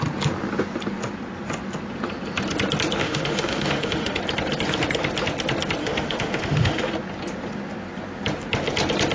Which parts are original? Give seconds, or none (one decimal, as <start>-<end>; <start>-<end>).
0.0-3.0; 4.2-5.8; 6.9-9.1